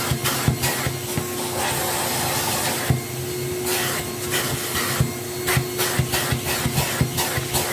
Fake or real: real